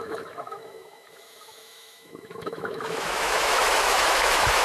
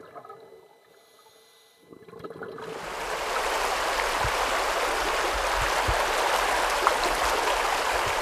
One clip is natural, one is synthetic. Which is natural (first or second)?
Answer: second